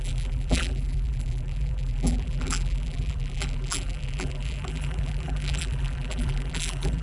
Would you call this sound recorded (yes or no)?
no